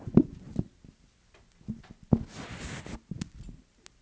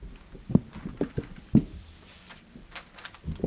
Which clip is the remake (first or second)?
second